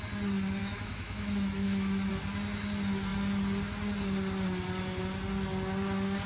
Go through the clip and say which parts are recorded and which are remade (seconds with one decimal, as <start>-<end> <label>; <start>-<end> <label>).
0.0-0.6 recorded; 0.6-2.1 remade; 2.1-6.3 recorded